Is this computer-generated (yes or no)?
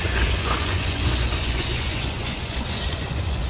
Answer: yes